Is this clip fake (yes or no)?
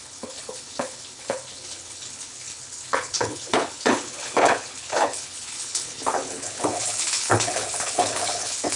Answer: yes